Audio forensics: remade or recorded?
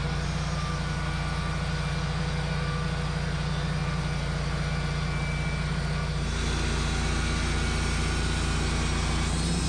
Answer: recorded